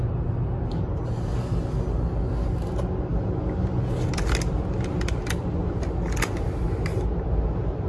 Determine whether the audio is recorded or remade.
recorded